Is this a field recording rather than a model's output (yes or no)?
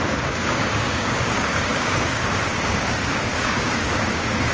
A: no